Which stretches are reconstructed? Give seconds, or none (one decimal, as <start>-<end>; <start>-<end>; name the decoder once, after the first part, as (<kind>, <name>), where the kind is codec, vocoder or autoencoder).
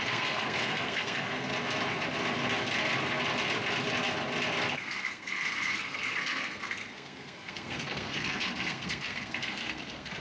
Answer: 0.0-1.5 (codec, SNAC); 4.7-10.2